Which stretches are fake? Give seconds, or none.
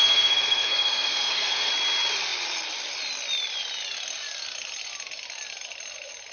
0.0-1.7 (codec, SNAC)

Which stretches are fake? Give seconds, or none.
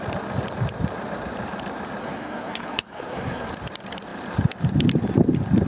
2.0-3.5 (codec, SNAC)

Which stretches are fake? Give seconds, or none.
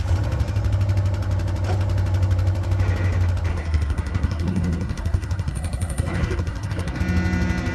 3.5-7.0 (codec, SNAC)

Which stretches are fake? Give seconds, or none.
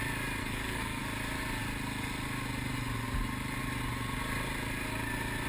0.4-1.0 (codec, SNAC)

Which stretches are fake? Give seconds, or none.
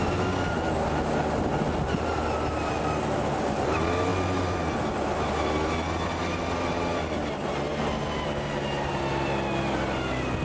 none